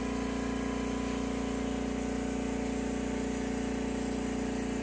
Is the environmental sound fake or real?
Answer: real